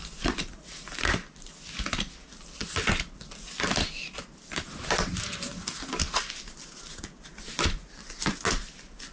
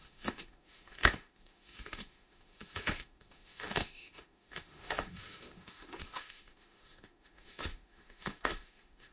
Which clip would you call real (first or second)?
first